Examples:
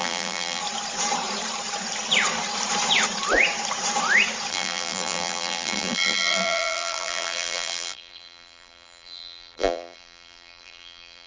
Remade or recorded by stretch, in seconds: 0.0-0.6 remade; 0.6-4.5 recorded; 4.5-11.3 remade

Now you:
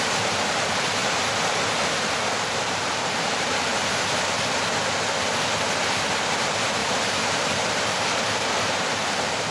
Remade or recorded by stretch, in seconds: 0.0-1.0 remade; 1.0-1.5 recorded; 1.5-3.7 remade; 3.7-6.0 recorded; 6.0-9.5 remade

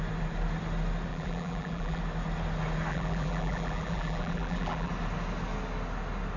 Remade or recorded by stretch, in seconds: 0.0-1.1 recorded; 1.1-2.0 remade; 2.0-2.9 recorded; 2.9-4.9 remade; 4.9-6.4 recorded

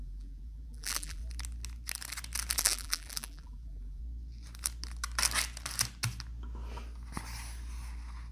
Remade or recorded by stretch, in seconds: 0.0-1.2 remade; 1.2-2.6 recorded; 2.6-4.0 remade; 4.0-8.3 recorded

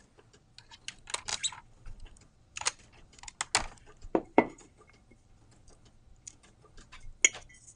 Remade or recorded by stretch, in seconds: 0.0-1.3 recorded; 1.3-3.4 remade; 3.4-3.8 recorded; 3.8-4.6 remade; 4.6-7.8 recorded

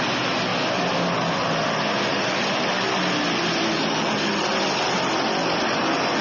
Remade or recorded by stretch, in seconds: 0.0-6.2 recorded